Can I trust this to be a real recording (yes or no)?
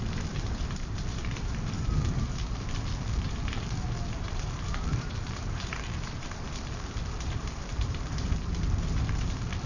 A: no